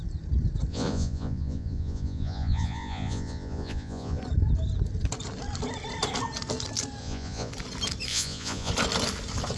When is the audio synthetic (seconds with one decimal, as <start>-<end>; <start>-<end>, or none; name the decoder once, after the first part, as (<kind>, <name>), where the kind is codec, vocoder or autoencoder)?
0.7-4.2 (vocoder, Vocos); 7.0-7.5; 8.1-8.7